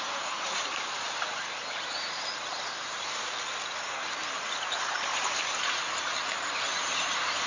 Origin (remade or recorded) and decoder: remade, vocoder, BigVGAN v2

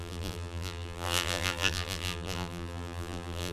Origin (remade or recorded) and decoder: remade, vocoder, BigVGAN v2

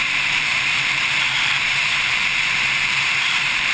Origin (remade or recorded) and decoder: remade, vocoder, BigVGAN v2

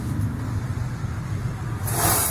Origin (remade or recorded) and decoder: recorded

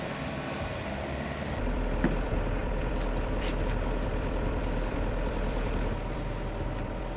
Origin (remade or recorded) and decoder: remade, vocoder, BigVGAN v2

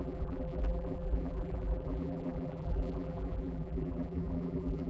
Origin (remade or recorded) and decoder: remade, vocoder, BigVGAN v2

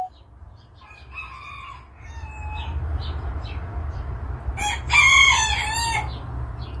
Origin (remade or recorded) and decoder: recorded